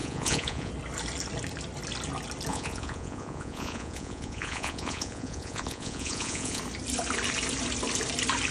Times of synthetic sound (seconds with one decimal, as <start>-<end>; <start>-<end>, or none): 0.0-0.7; 2.5-6.6